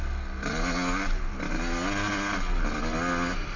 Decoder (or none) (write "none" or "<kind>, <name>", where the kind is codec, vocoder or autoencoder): none